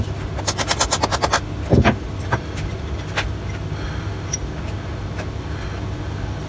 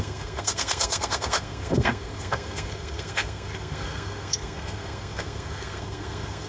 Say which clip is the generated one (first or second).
second